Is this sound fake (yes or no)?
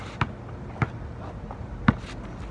no